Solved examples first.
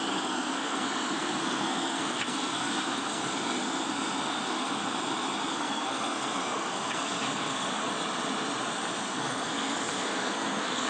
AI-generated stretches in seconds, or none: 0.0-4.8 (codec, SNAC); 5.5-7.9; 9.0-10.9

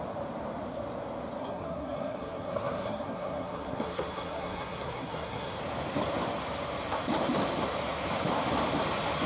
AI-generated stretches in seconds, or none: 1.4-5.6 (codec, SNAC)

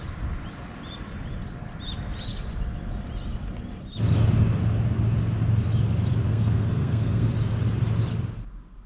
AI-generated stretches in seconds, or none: 6.3-7.3 (codec, SNAC)

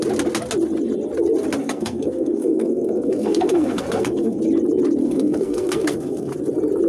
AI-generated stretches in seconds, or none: 1.6-4.4 (codec, SNAC); 5.0-6.3

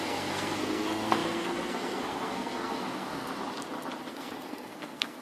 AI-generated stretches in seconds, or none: 0.0-3.3 (codec, SNAC); 4.1-5.2

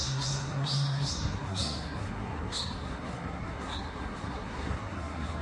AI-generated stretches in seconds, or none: 0.0-5.4 (codec, SNAC)

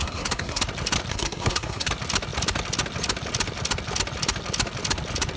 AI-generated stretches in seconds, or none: 0.0-0.6 (codec, SNAC); 1.1-1.9

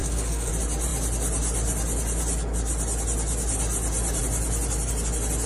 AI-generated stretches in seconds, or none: 0.0-0.5 (codec, SNAC)